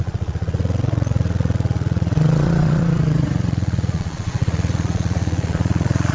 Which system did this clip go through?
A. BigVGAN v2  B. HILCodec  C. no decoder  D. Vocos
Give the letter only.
D